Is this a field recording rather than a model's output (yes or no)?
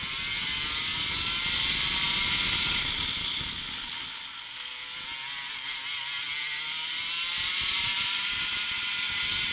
yes